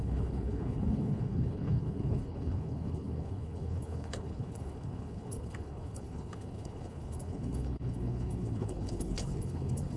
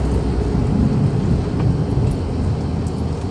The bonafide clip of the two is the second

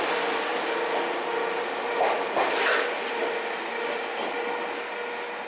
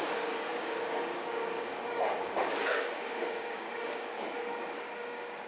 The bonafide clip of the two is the first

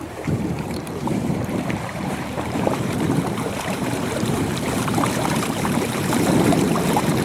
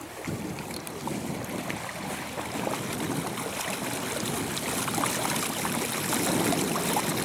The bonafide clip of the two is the second